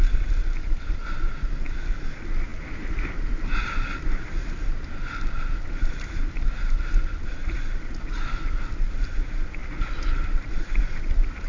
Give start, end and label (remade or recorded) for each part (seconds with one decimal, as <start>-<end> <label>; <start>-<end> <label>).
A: 0.0-11.5 recorded